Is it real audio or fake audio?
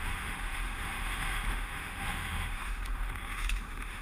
fake